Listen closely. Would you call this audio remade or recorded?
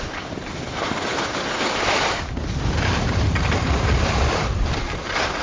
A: remade